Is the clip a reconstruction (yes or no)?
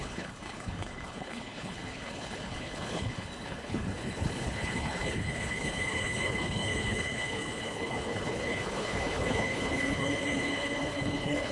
yes